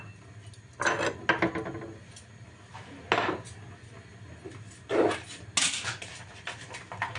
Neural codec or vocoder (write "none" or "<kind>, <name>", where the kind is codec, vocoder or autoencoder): none